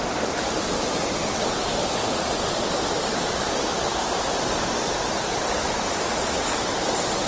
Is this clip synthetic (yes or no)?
no